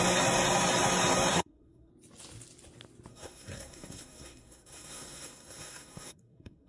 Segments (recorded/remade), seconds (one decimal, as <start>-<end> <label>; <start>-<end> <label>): 0.0-1.3 recorded; 1.3-1.9 remade; 1.9-3.1 recorded; 3.1-6.7 remade